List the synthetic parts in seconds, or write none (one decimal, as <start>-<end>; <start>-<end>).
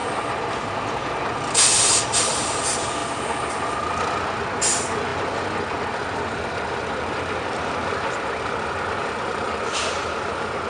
9.0-9.6